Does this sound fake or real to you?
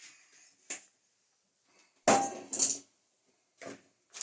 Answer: real